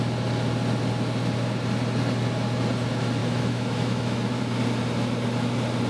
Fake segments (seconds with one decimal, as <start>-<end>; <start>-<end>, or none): 3.2-4.4